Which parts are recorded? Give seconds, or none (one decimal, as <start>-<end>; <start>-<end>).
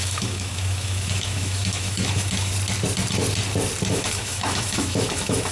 2.5-3.9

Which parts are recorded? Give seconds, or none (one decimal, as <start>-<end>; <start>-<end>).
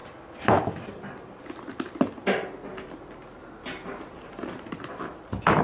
0.0-5.6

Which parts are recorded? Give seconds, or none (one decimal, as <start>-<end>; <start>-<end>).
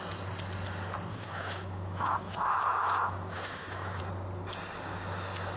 0.0-1.1; 4.0-5.6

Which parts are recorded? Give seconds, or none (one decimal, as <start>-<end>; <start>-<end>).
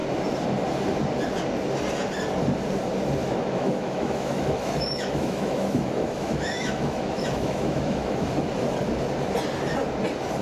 0.0-3.2; 8.3-10.4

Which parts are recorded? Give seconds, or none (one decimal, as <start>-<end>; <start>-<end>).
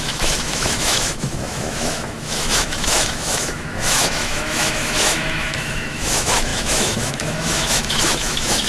none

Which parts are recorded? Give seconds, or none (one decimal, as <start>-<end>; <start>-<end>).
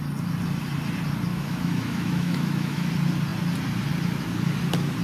0.0-1.3; 2.9-5.0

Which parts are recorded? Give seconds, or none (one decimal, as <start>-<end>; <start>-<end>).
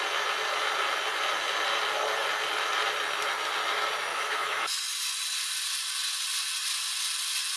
0.0-4.1; 4.7-7.6